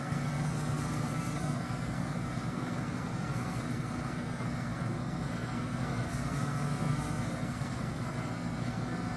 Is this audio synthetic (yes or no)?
yes